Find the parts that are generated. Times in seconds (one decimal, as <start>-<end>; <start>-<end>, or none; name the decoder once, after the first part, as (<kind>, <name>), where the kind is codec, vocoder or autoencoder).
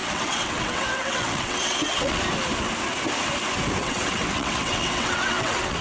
0.0-2.2 (vocoder, WaveNeXt); 3.8-5.8